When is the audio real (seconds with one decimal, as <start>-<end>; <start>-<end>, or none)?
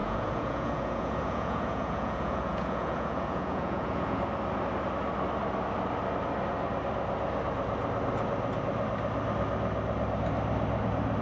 4.2-11.2